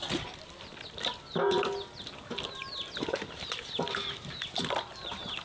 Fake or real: real